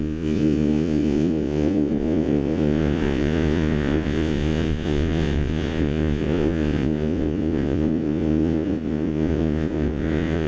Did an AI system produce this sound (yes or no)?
yes